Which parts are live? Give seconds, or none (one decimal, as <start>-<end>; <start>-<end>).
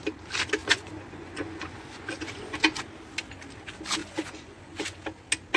0.0-0.6; 2.6-4.0; 5.0-5.6